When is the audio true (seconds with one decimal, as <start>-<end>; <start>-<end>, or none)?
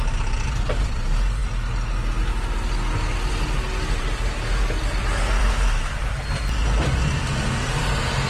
0.0-5.4; 7.8-8.3